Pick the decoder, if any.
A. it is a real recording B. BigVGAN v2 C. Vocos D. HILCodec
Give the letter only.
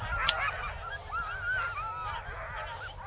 A